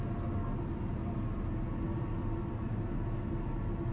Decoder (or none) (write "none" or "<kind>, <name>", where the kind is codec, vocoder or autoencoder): none